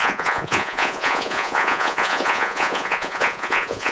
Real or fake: fake